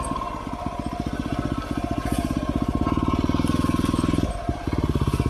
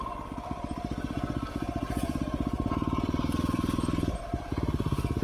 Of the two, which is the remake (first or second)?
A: second